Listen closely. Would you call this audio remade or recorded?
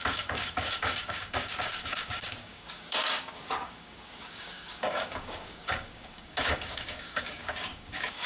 remade